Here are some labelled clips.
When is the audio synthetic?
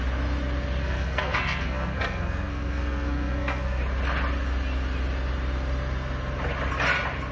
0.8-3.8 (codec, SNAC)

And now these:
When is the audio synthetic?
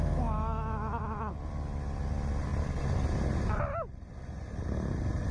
0.0-1.4 (autoencoder, DAC-VAE)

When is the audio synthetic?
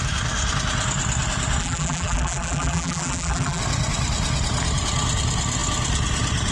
1.6-3.6 (vocoder, BigVGAN v2)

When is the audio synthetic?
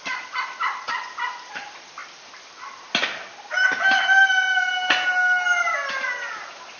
none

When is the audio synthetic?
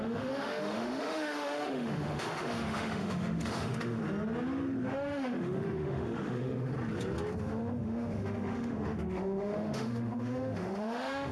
0.0-4.0 (autoencoder, DAC-VAE); 4.9-6.7; 7.4-11.3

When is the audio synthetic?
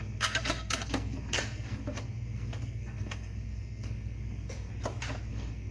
0.0-4.7 (codec, SNAC); 5.3-5.7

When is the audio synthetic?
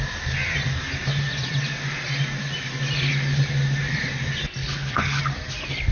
4.6-5.2 (codec, HILCodec)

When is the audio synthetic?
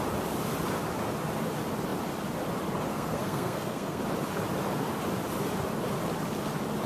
2.9-4.0 (codec, SNAC)